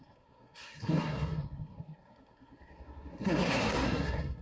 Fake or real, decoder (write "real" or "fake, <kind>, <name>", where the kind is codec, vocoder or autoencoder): fake, codec, SNAC